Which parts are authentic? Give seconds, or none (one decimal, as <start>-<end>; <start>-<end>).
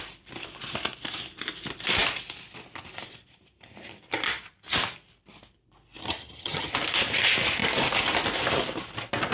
0.0-6.0; 6.7-9.3